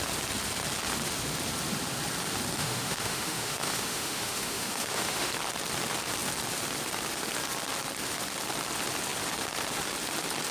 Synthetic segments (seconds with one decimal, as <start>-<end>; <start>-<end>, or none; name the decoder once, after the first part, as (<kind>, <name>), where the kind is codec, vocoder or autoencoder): 2.6-5.3 (autoencoder, DAC-VAE)